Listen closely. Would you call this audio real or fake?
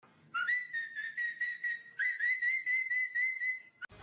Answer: real